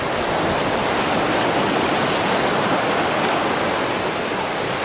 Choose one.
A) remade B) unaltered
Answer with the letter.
B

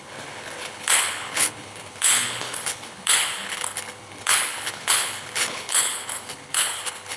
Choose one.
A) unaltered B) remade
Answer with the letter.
B